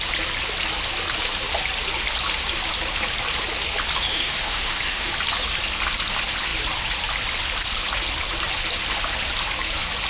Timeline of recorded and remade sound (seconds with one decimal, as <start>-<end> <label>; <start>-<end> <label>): 0.0-4.1 recorded; 4.1-5.1 remade; 5.1-10.1 recorded